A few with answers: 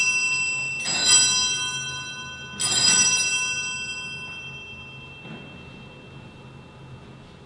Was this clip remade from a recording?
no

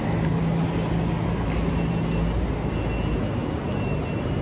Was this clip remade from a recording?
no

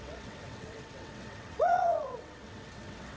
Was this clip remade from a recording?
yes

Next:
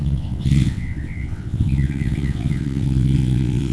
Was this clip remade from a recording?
yes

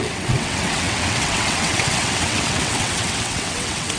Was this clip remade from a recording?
yes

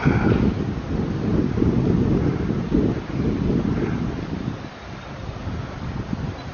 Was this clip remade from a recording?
no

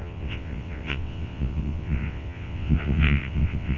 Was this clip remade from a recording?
yes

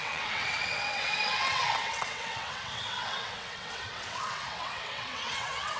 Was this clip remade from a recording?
yes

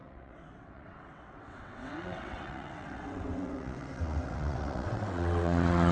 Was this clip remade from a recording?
yes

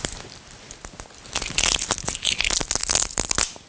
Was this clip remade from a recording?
no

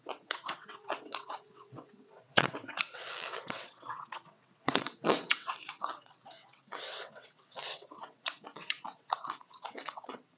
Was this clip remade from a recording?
yes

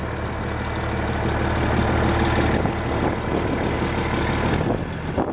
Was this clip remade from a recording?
no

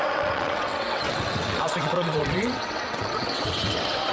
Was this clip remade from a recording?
yes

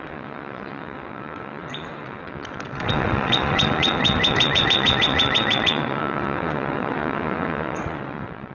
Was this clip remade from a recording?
yes